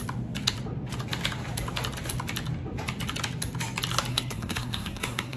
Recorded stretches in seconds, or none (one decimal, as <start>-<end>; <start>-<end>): 0.0-4.1